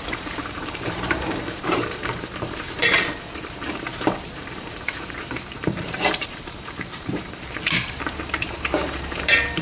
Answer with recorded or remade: remade